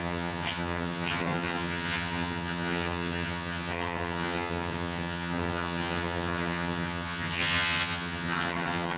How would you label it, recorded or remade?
remade